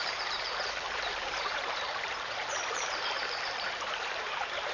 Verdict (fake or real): fake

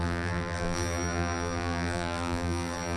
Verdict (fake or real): fake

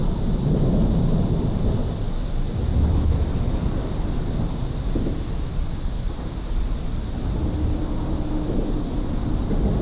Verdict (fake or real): real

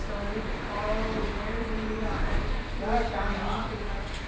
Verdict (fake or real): real